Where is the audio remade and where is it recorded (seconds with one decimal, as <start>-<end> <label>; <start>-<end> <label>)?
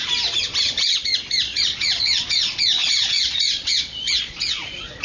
0.0-0.6 recorded; 0.6-5.0 remade